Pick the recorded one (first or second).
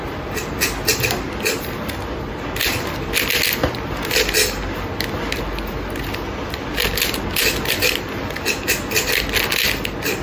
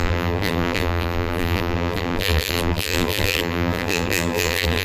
first